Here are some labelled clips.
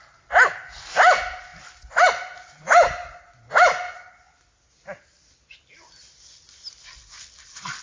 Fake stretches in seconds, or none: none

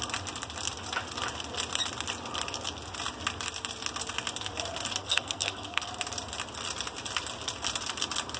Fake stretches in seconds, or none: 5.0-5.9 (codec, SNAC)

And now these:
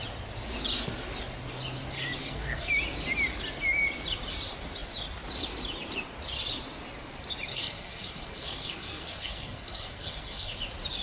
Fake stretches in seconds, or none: 2.2-2.7 (codec, SNAC); 7.5-10.6